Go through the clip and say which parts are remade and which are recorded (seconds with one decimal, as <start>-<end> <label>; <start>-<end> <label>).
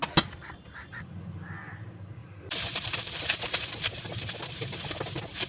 0.0-2.2 recorded; 2.2-5.1 remade; 5.1-5.5 recorded